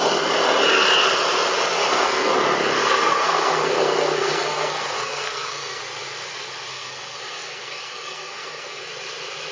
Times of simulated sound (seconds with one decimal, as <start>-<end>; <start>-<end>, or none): 1.8-2.3; 2.8-5.8; 6.7-8.8